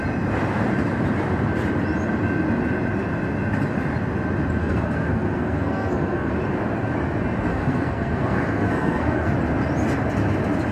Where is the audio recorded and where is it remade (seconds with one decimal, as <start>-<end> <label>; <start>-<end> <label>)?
0.0-4.6 recorded; 4.6-6.3 remade; 6.3-7.5 recorded; 7.5-9.3 remade; 9.3-10.7 recorded